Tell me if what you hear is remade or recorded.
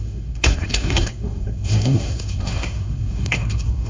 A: remade